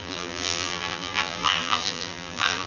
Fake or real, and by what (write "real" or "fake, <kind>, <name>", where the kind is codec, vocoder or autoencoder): fake, vocoder, BigVGAN v2